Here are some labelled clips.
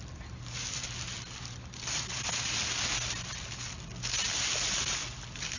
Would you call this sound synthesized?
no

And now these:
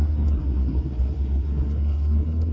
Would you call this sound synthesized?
yes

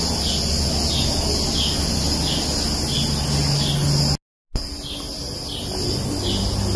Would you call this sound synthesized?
no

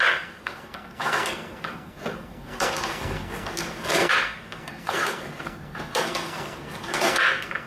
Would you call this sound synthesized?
yes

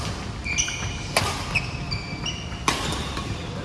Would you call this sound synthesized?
no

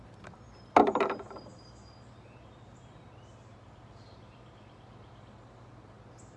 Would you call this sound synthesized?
no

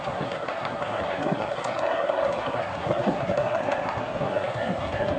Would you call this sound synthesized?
yes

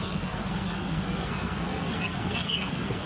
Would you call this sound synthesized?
yes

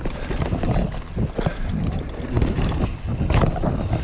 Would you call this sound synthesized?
no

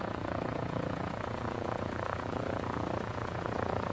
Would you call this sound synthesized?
yes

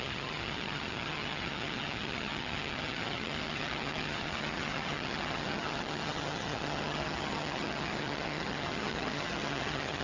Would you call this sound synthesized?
yes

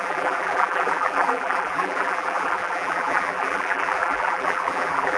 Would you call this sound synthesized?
yes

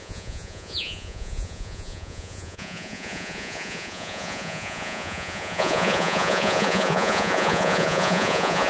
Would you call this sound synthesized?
yes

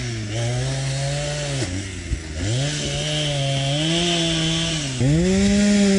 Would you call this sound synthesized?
no